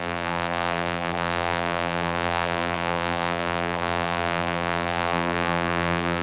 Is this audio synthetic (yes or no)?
yes